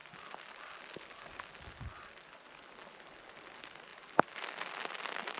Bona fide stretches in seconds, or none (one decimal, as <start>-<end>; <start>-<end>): 0.0-5.4

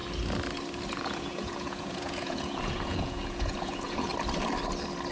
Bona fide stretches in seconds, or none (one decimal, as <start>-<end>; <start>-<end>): 0.0-0.9; 4.1-5.1

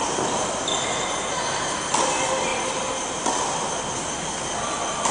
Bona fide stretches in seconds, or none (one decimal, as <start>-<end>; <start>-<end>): 0.0-5.1

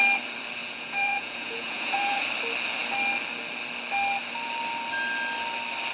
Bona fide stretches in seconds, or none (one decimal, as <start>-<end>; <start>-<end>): 0.0-0.6; 2.3-5.9

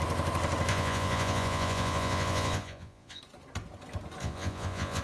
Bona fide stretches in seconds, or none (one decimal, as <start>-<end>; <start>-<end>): 0.0-0.7; 3.2-4.2